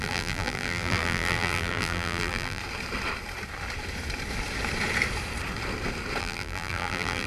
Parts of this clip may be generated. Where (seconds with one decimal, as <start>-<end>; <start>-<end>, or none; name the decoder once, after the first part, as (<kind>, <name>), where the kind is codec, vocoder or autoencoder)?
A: 0.0-2.6 (vocoder, BigVGAN v2); 6.2-7.3